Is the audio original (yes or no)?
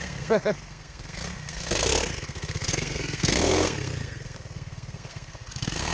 no